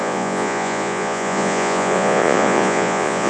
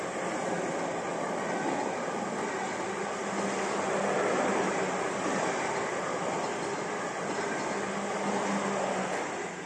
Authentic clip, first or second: second